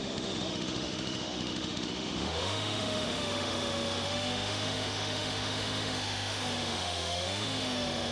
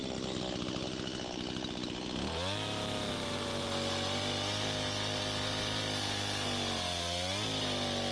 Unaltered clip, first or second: second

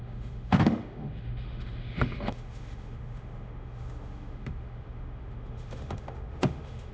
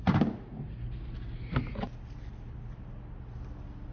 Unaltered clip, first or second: second